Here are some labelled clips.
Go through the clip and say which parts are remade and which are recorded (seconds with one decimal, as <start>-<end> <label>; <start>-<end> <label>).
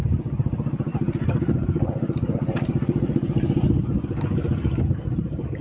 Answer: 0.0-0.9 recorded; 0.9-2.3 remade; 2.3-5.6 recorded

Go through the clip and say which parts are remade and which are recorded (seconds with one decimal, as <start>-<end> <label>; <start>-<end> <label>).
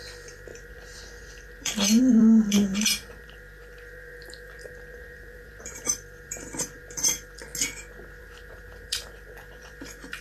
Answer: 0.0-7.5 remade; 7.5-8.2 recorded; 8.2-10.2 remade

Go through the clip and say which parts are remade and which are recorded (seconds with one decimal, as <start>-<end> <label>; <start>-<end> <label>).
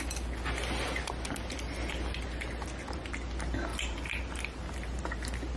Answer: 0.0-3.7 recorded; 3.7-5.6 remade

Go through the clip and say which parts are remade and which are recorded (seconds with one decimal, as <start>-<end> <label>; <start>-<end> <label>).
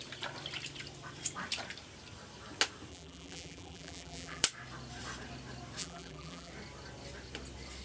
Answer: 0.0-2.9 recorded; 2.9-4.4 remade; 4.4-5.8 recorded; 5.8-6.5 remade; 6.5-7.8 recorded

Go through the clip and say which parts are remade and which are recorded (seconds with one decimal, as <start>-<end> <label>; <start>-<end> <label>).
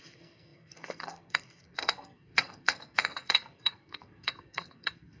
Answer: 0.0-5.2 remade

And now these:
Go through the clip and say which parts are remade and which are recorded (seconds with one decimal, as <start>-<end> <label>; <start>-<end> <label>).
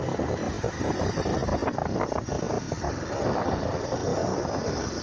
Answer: 0.0-5.0 recorded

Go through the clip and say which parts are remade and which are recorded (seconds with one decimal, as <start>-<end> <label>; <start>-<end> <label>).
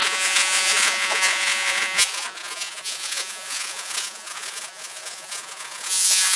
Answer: 0.0-6.4 remade